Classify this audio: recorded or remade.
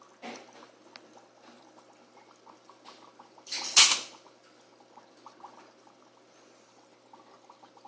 recorded